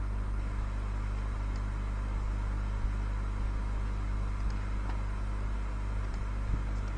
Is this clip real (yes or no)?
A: yes